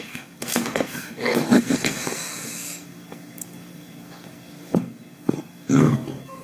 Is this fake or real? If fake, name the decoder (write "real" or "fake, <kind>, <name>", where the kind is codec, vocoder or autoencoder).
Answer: fake, codec, SNAC